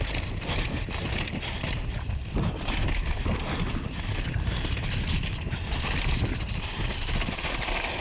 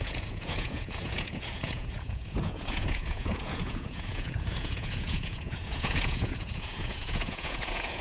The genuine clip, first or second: first